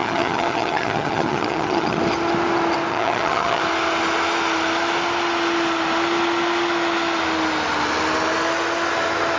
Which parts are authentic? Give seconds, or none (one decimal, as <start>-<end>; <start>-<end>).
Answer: 2.0-2.9; 3.6-9.4

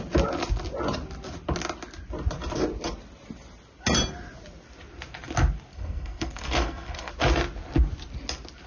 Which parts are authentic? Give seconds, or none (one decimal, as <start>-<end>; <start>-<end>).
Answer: 0.0-5.7; 7.1-8.7

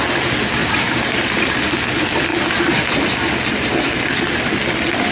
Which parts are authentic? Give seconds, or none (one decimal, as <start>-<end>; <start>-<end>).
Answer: 0.0-0.6; 1.6-5.1

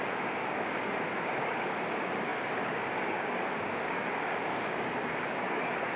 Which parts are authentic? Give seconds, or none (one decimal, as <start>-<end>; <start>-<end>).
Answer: none